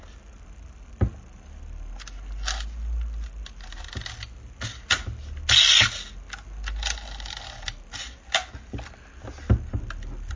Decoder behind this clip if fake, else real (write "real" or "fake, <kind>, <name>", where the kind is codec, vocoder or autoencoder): real